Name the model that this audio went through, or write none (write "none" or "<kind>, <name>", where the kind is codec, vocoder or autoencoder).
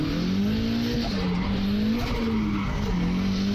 none